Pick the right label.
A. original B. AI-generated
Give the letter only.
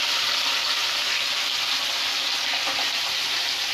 B